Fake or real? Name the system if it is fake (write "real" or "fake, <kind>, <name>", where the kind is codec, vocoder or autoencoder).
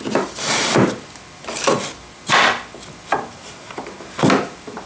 real